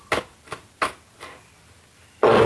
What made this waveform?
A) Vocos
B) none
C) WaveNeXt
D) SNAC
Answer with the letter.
B